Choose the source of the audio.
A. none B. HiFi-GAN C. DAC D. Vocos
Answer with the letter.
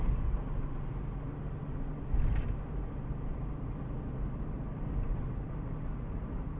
A